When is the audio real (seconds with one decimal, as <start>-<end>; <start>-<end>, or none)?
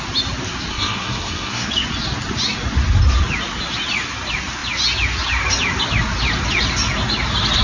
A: 0.0-0.7; 1.7-7.6